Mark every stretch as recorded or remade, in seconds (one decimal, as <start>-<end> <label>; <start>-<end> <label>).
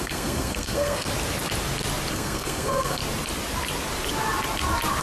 0.0-1.1 remade; 1.1-2.1 recorded; 2.1-3.0 remade; 3.0-5.0 recorded